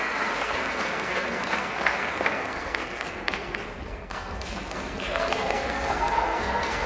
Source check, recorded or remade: remade